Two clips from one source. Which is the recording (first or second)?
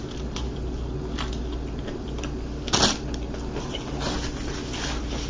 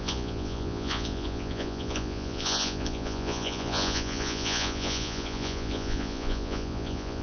first